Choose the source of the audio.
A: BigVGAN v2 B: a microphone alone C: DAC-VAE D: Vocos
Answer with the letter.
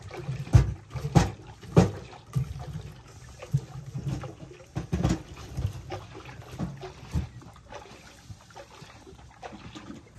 B